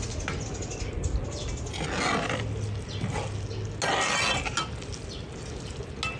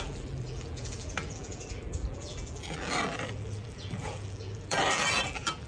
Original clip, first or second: first